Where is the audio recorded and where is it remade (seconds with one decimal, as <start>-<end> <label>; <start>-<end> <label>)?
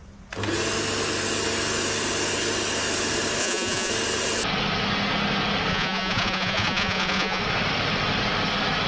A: 0.0-3.4 recorded; 3.4-3.9 remade; 3.9-5.7 recorded; 5.7-7.4 remade; 7.4-8.9 recorded